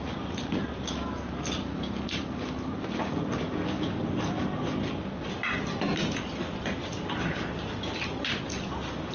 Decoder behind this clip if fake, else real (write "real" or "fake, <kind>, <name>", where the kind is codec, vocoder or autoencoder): real